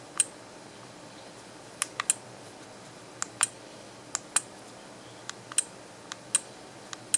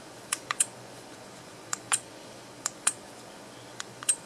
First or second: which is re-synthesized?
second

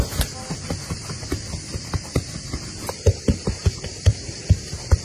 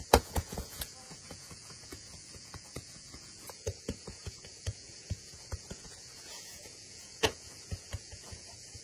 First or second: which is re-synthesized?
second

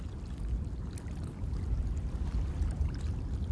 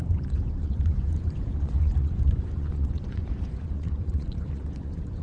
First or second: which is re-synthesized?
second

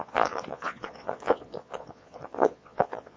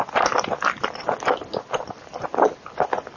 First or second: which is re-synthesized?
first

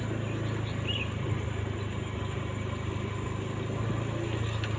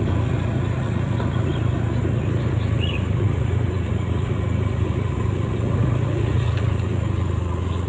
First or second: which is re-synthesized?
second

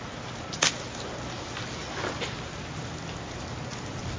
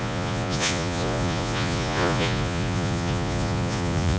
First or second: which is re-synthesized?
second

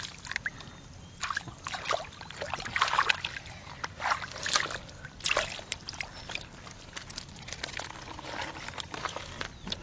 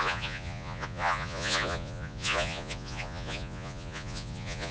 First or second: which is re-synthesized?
second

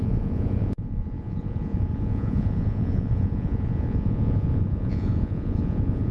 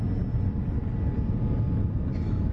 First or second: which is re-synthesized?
first